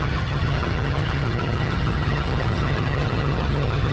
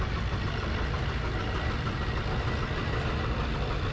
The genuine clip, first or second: second